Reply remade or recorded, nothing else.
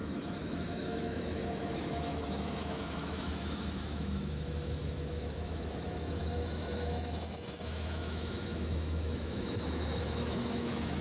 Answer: remade